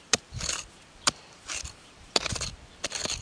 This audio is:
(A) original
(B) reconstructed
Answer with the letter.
B